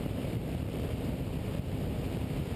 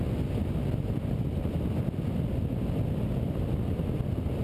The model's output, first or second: first